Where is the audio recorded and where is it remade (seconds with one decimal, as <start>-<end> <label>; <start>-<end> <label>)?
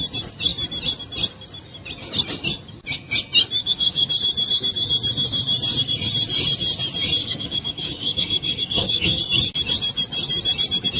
0.0-3.6 recorded; 3.6-4.1 remade; 4.1-7.2 recorded; 7.2-9.2 remade; 9.2-11.0 recorded